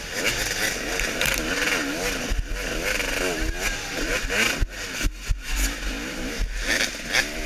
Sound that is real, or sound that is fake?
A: real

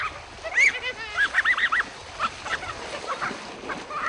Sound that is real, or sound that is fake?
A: real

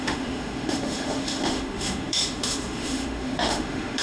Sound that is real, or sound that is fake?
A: fake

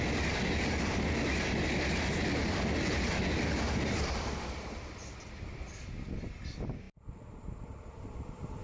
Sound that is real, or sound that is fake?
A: real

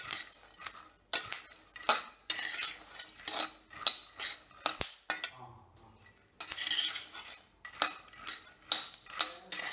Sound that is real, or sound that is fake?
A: real